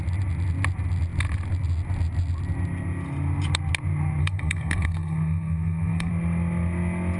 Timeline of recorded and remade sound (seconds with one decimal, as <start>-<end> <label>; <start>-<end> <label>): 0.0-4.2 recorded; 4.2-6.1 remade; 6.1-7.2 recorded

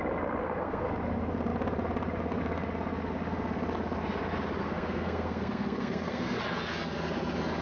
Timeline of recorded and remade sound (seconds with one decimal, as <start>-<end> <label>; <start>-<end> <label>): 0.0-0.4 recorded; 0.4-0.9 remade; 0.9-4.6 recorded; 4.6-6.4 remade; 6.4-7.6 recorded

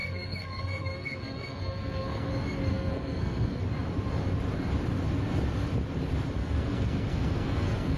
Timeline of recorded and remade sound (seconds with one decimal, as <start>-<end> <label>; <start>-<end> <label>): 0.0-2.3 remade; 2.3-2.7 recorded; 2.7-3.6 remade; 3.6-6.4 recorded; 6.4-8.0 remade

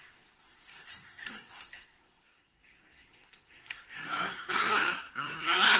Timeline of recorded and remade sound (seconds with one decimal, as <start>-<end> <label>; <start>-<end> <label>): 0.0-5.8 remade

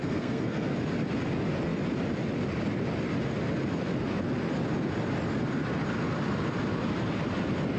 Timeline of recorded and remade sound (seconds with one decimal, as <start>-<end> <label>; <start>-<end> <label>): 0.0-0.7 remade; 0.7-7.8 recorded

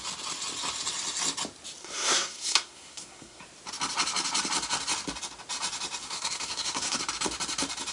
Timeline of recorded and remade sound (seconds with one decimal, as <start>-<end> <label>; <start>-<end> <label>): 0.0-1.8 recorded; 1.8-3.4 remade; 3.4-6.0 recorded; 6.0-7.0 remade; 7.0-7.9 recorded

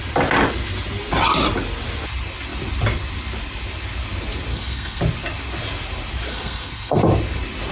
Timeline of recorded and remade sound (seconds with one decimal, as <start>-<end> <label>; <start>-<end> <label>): 0.0-4.5 recorded; 4.5-5.0 remade; 5.0-6.3 recorded; 6.3-7.0 remade; 7.0-7.7 recorded